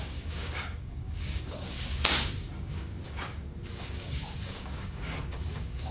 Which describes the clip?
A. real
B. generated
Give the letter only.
B